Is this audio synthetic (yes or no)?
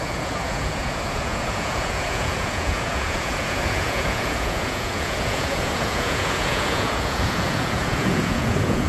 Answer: yes